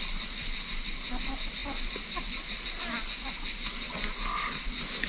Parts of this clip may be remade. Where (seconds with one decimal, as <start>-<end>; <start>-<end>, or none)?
none